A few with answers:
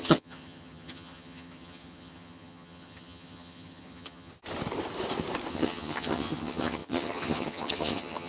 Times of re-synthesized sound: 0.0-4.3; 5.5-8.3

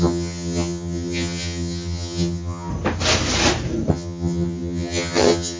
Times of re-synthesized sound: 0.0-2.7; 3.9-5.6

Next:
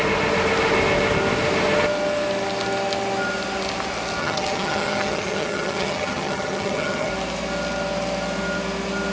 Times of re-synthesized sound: 4.2-7.1

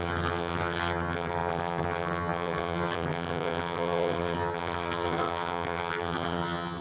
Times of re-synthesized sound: 0.0-6.8

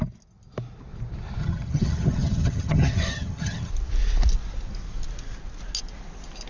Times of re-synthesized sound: 1.4-3.7

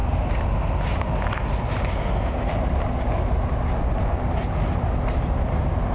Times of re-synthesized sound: none

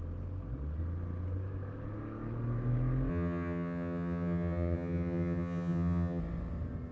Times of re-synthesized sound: 3.1-6.2

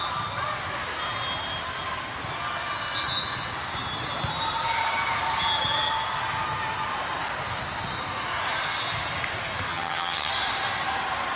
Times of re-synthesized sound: 9.7-10.3